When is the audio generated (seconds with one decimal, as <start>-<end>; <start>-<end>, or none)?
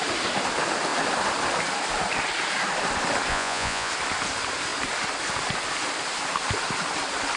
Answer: 3.3-3.9